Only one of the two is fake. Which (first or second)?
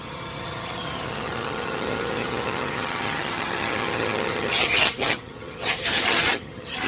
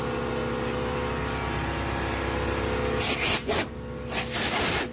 first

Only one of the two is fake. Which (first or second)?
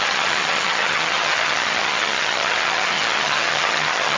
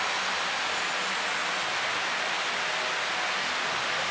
first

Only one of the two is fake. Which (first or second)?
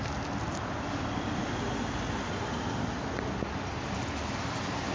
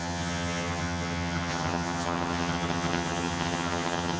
second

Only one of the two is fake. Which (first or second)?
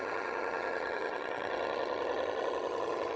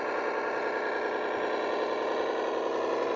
first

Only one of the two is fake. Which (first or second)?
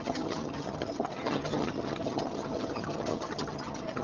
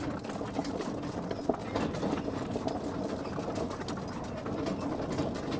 first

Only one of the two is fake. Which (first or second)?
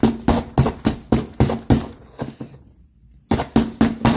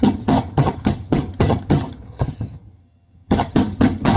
second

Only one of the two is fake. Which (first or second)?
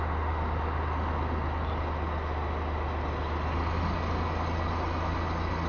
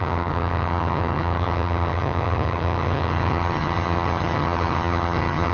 second